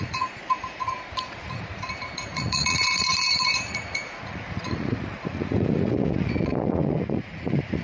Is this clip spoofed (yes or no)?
yes